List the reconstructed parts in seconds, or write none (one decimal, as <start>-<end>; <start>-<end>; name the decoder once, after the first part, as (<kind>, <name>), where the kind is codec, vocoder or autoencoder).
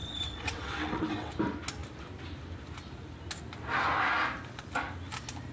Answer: 0.0-1.3 (vocoder, WaveNeXt)